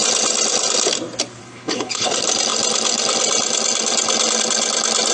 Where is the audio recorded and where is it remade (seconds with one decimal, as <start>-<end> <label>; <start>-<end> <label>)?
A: 0.0-1.4 recorded; 1.4-2.1 remade; 2.1-5.1 recorded